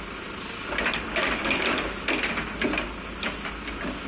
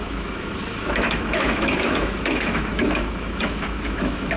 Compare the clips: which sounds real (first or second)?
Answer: first